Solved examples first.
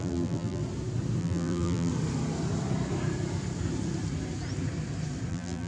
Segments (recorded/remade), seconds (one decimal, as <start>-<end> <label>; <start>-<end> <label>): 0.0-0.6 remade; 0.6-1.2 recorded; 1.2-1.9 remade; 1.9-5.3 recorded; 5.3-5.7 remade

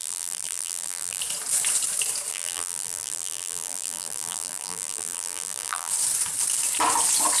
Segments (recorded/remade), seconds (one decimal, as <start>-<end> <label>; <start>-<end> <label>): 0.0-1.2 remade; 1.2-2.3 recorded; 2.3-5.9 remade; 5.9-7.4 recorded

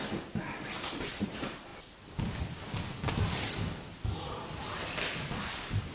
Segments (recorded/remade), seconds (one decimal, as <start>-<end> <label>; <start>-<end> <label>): 0.0-5.9 recorded